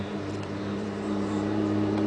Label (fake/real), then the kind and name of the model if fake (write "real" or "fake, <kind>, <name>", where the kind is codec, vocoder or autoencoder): fake, vocoder, BigVGAN v2